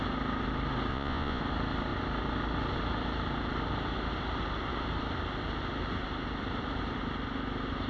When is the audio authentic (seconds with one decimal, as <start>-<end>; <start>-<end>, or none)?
0.0-0.9; 1.4-7.9